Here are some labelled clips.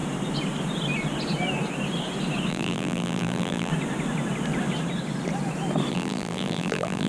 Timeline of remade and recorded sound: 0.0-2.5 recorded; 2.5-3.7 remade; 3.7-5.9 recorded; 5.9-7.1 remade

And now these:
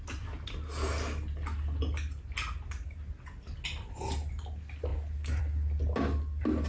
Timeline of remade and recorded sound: 0.0-6.7 recorded

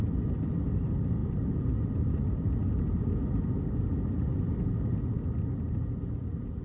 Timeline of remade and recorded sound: 0.0-1.2 recorded; 1.2-3.0 remade; 3.0-6.6 recorded

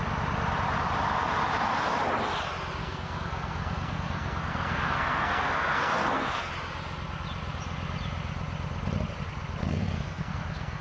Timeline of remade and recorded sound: 0.0-2.8 recorded; 2.8-6.5 remade; 6.5-9.6 recorded; 9.6-10.8 remade

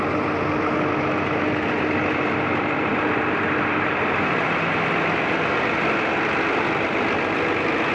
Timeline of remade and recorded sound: 0.0-7.9 recorded

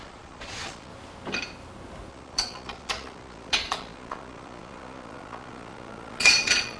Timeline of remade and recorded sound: 0.0-0.9 remade; 0.9-2.1 recorded; 2.1-6.8 remade

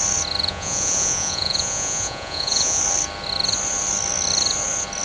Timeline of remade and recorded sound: 0.0-0.5 recorded; 0.5-2.8 remade; 2.8-5.0 recorded